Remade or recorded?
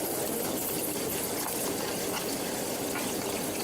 recorded